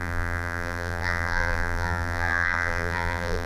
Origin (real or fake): fake